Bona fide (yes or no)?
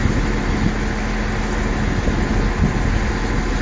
yes